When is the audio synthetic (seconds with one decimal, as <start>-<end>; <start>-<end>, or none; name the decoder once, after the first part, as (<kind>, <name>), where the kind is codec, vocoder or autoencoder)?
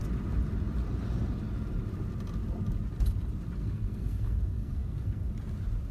3.6-5.3 (codec, SNAC)